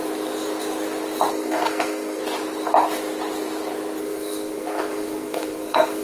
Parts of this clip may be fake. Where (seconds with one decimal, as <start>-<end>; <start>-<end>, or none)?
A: 1.3-2.2; 4.0-6.0